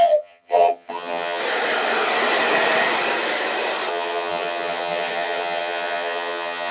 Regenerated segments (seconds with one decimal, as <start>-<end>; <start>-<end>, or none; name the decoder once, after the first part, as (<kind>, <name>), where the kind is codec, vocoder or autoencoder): 0.0-1.4 (vocoder, HiFi-GAN); 3.9-6.7